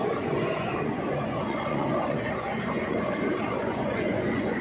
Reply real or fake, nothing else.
fake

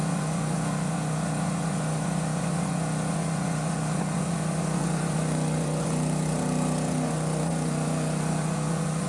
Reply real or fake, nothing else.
fake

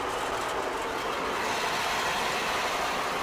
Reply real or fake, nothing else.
real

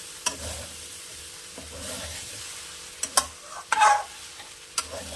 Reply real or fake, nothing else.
real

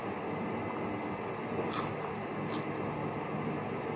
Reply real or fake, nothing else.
real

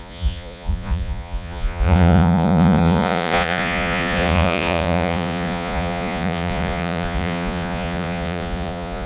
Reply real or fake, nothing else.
fake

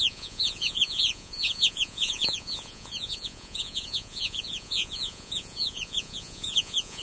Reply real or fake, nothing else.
fake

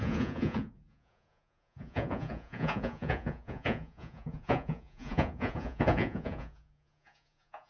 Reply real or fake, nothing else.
fake